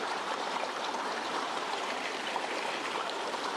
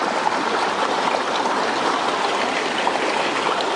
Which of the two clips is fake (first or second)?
first